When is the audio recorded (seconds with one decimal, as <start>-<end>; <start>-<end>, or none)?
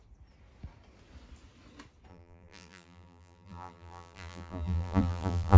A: 0.0-2.1